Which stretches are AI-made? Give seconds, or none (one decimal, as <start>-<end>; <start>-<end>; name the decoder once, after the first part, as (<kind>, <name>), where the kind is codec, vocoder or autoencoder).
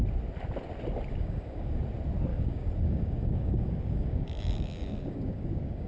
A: 1.1-1.8 (codec, DAC); 2.3-5.9